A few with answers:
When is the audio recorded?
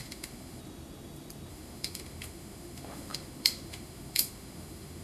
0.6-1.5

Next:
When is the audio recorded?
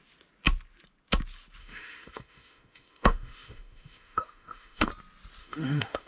0.0-1.6; 4.9-5.4